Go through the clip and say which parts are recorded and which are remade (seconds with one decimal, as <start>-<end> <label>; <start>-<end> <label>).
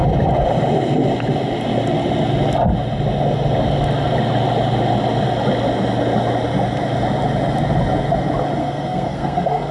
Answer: 0.0-8.6 recorded; 8.6-9.7 remade